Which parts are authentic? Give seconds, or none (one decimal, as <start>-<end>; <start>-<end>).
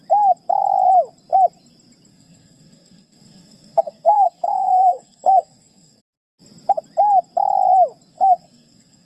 0.0-2.1; 6.0-8.1